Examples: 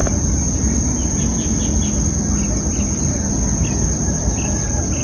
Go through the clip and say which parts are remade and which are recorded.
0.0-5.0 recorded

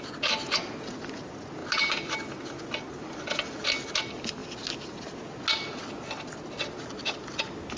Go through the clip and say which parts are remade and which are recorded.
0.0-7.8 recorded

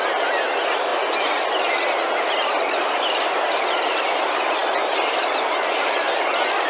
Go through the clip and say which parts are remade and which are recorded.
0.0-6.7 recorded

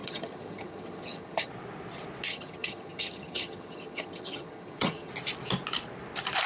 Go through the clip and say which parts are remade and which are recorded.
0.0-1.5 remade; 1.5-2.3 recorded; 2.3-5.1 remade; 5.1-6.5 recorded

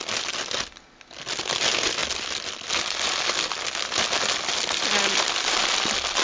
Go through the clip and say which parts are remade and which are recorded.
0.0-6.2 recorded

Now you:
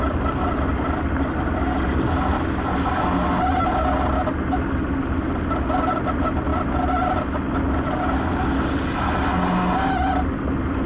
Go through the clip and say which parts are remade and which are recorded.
0.0-10.9 recorded